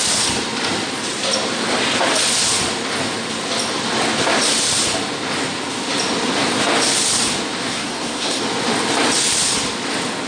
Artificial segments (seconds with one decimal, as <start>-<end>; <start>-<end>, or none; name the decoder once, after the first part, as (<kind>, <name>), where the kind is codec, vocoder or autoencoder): 7.7-8.4 (codec, SNAC)